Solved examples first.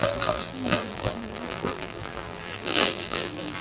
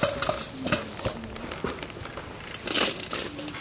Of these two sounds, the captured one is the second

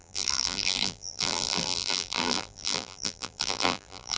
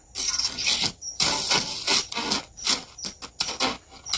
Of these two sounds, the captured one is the second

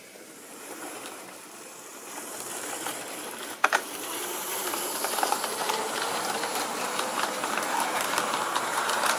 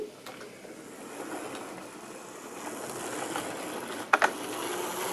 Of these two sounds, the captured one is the second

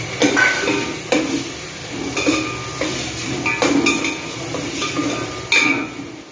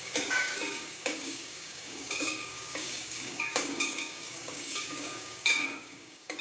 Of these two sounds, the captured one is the first